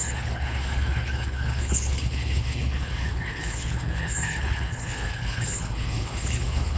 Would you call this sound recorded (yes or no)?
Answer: no